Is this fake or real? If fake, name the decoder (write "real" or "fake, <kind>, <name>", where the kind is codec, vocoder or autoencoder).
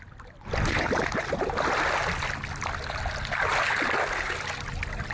real